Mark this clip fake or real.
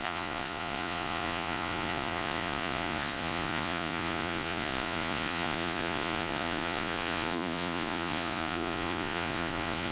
fake